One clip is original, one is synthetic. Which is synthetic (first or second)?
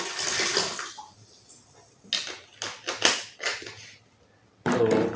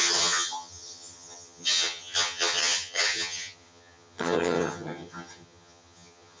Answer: second